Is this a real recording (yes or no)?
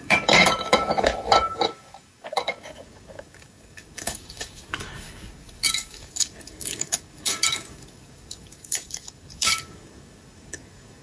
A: no